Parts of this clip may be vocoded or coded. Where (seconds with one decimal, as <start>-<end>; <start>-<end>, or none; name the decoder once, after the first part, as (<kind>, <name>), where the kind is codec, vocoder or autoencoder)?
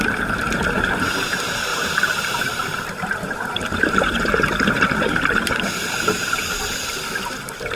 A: 1.7-6.4 (vocoder, BigVGAN v2)